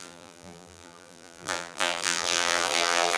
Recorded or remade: remade